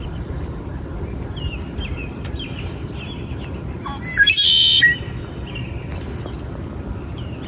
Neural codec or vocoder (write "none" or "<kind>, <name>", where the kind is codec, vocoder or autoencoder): none